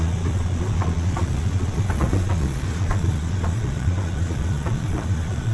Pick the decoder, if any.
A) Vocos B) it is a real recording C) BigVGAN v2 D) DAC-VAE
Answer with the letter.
A